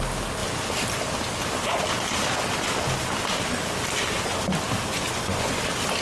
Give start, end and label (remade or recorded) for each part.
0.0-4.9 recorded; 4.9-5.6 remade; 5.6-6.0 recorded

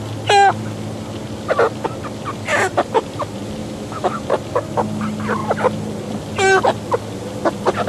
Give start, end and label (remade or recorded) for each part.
0.0-3.6 recorded; 3.6-4.2 remade; 4.2-7.9 recorded

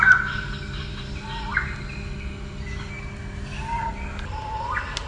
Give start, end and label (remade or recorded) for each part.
0.0-5.1 recorded

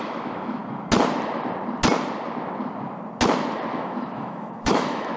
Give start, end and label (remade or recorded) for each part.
0.0-0.6 remade; 0.6-3.7 recorded; 3.7-5.2 remade

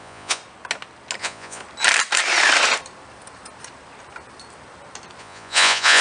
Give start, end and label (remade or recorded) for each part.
0.0-0.4 remade; 0.4-1.2 recorded; 1.2-1.6 remade; 1.6-5.2 recorded; 5.2-6.0 remade